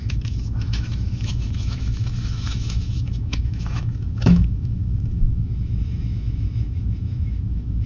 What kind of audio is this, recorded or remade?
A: remade